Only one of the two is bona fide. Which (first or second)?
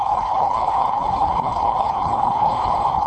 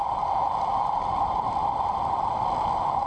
second